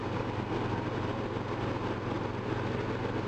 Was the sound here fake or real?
real